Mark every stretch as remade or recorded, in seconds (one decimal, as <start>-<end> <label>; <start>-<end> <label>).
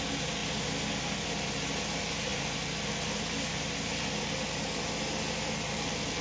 0.0-6.2 recorded